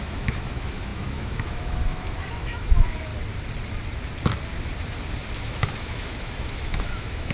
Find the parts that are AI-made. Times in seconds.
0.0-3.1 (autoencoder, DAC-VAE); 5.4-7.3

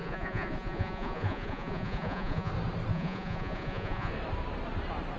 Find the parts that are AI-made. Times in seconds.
0.0-2.5 (vocoder, Vocos); 2.9-4.1